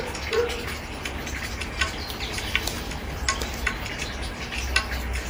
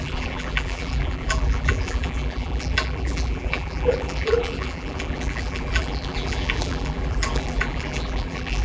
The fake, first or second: second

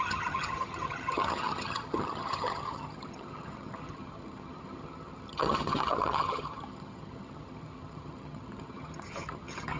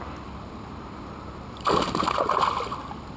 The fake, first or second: first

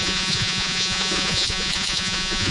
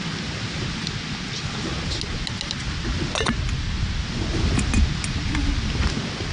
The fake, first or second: first